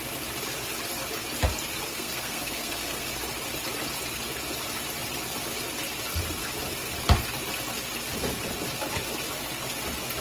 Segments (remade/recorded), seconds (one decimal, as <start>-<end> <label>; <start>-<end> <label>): 0.0-1.9 recorded; 1.9-3.1 remade; 3.1-10.2 recorded